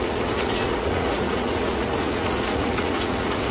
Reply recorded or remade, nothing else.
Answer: remade